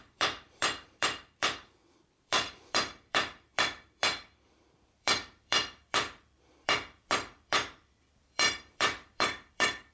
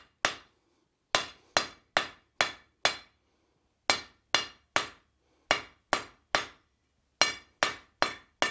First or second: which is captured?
second